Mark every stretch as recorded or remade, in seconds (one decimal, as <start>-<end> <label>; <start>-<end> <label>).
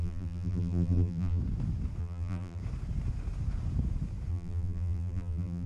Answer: 0.0-1.4 remade; 1.4-2.0 recorded; 2.0-2.6 remade; 2.6-4.3 recorded; 4.3-5.7 remade